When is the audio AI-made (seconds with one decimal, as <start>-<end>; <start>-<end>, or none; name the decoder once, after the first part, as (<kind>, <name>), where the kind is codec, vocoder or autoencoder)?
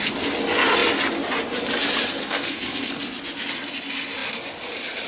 2.2-3.0 (codec, SNAC)